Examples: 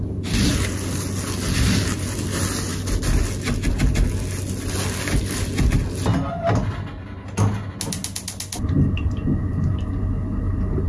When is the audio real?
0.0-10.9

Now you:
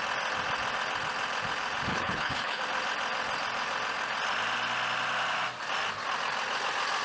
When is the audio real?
0.0-1.9; 2.6-7.0